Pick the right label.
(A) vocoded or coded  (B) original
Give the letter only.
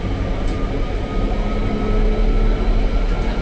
B